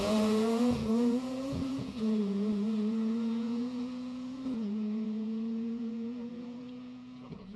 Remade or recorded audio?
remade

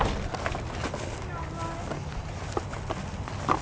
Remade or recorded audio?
recorded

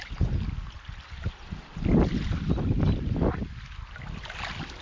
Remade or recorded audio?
recorded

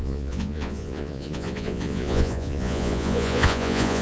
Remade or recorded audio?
remade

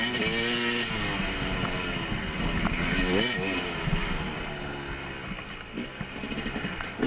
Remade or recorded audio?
recorded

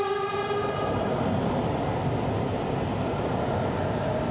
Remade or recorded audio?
recorded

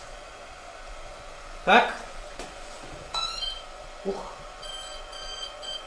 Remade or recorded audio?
remade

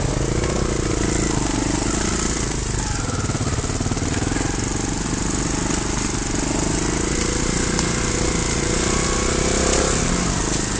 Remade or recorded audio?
recorded